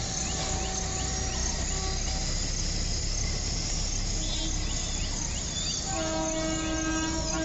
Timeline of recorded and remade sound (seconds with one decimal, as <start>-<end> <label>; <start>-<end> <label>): 0.0-7.4 recorded